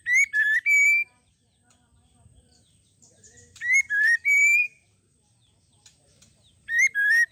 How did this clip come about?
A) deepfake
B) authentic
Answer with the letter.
A